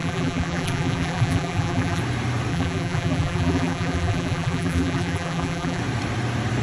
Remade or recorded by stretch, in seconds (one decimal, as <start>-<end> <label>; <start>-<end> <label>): 0.0-2.0 remade; 2.0-2.5 recorded; 2.5-5.8 remade; 5.8-6.6 recorded